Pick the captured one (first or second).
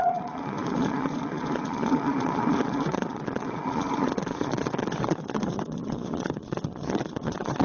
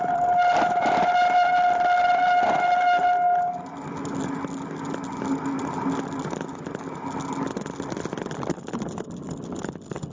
second